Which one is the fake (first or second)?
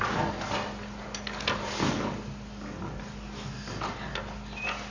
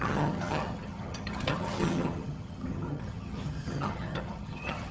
second